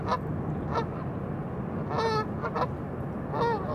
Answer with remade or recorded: recorded